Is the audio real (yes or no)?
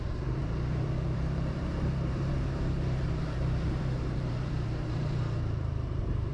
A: no